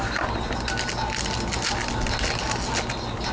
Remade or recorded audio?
recorded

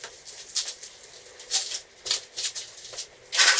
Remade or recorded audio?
recorded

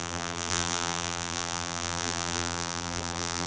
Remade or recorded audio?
remade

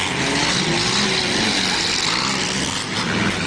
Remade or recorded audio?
recorded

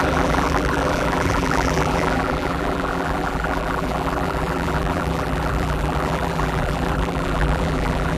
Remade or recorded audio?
remade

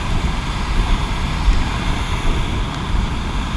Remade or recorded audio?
recorded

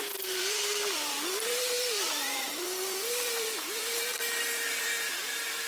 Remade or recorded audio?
remade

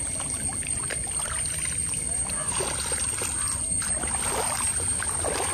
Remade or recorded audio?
recorded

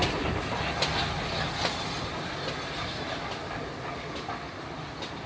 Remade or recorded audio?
recorded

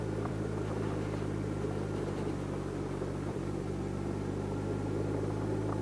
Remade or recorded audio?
recorded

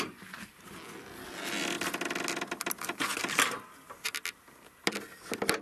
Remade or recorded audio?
recorded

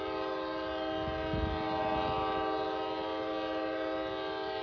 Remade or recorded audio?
recorded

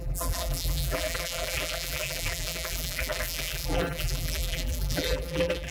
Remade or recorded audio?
remade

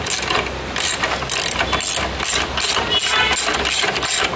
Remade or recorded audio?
recorded